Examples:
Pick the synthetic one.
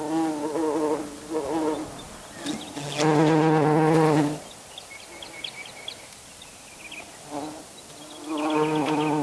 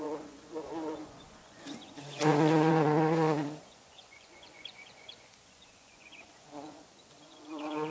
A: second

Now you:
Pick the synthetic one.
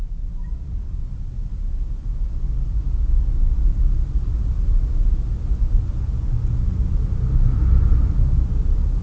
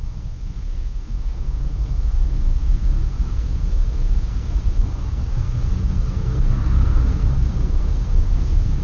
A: second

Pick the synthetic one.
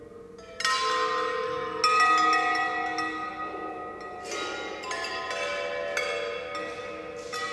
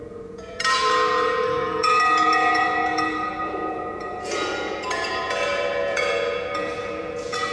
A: second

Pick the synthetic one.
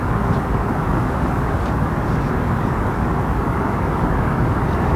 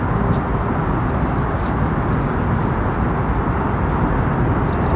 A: first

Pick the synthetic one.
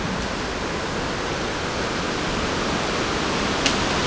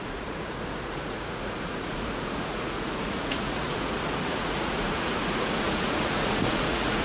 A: second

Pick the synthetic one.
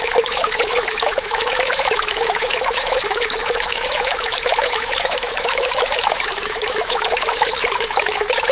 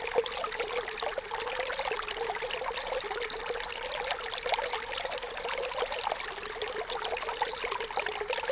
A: first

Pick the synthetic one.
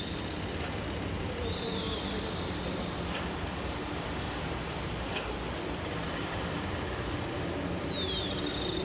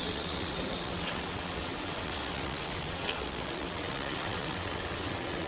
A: second